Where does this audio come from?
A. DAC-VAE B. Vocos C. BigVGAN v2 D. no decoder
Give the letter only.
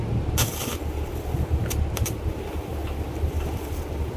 D